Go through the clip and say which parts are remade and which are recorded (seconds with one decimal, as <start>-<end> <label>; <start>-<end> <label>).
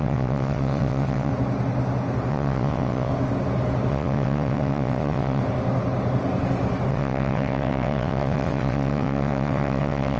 0.0-1.3 remade; 1.3-2.3 recorded; 2.3-3.1 remade; 3.1-3.9 recorded; 3.9-5.4 remade; 5.4-6.9 recorded; 6.9-10.2 remade